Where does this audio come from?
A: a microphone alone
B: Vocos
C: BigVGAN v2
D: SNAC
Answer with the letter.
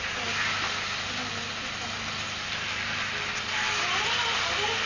A